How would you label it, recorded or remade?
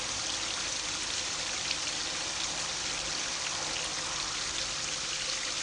recorded